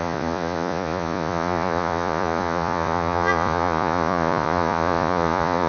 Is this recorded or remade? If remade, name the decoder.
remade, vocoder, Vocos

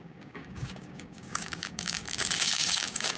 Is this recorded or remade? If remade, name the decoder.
remade, codec, DAC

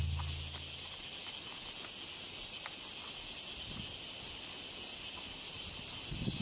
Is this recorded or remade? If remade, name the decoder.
recorded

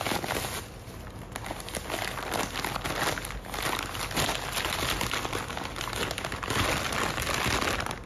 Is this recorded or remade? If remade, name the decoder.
recorded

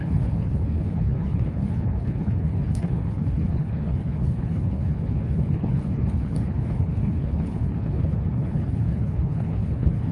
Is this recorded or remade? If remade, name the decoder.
remade, codec, HILCodec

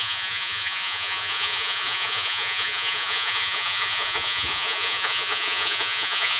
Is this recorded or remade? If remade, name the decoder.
remade, vocoder, Vocos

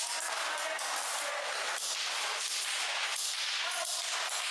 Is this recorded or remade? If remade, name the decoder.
recorded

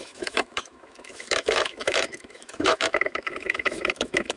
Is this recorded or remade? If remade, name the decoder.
remade, autoencoder, DAC-VAE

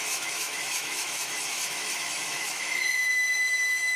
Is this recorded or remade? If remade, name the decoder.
remade, autoencoder, DAC-VAE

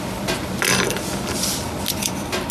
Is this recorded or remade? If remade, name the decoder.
recorded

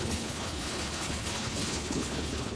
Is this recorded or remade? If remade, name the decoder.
remade, codec, HILCodec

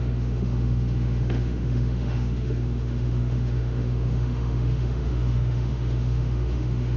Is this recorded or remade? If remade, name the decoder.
remade, autoencoder, DAC-VAE